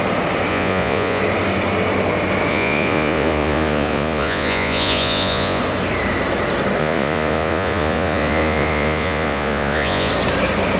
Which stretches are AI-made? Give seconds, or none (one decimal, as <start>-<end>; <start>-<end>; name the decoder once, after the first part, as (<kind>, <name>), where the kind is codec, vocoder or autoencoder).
0.5-1.2 (vocoder, Vocos); 2.5-5.6; 6.8-10.1